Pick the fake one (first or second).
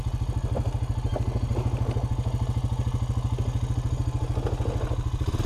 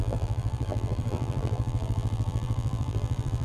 second